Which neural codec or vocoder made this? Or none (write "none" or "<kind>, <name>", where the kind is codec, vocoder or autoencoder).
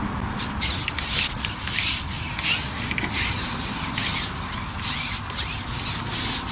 none